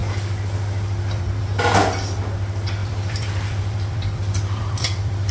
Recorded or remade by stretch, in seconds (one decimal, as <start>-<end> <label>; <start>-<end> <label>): 0.0-2.8 recorded; 2.8-5.3 remade

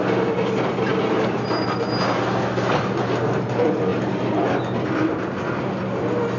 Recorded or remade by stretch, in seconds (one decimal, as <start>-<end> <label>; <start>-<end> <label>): 0.0-6.4 recorded

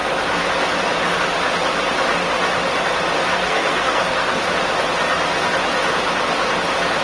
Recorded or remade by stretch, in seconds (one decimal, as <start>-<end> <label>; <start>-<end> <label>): 0.0-3.3 recorded; 3.3-4.4 remade; 4.4-7.0 recorded